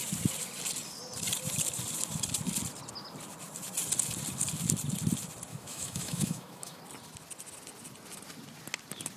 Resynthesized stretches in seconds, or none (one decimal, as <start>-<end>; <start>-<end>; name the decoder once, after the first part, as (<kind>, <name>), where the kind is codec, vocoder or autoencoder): 5.5-6.8 (autoencoder, DAC-VAE)